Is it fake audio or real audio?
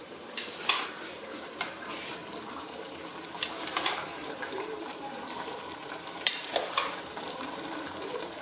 fake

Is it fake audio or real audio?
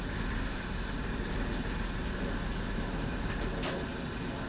real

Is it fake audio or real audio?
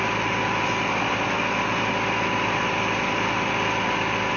real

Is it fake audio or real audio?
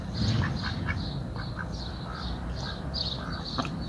real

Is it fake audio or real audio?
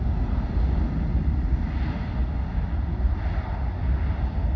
real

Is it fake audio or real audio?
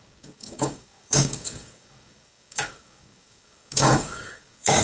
fake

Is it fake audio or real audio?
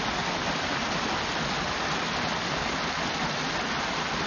real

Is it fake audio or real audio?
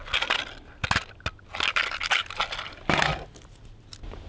real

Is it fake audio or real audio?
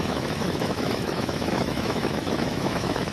fake